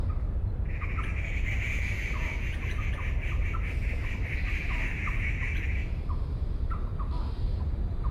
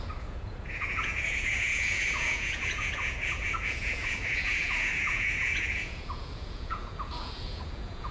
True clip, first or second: first